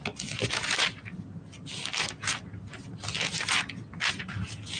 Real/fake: real